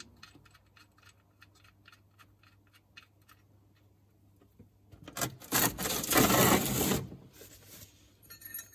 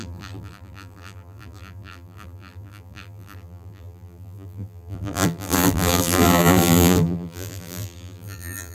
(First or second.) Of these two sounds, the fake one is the second